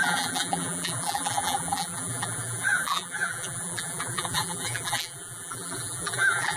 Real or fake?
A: fake